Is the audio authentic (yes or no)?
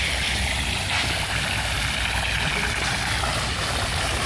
yes